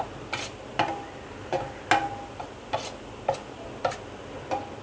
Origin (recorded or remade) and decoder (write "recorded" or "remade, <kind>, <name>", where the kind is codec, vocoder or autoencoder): recorded